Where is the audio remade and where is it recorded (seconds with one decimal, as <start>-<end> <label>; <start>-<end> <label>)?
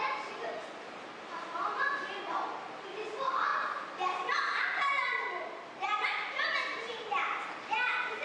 0.0-8.2 recorded